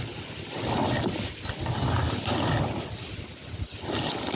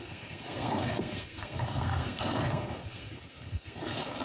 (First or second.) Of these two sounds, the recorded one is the first